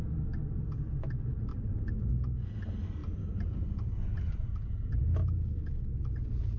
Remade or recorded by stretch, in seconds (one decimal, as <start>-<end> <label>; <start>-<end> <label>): 0.0-1.5 recorded; 1.5-2.1 remade; 2.1-3.0 recorded; 3.0-5.0 remade; 5.0-6.6 recorded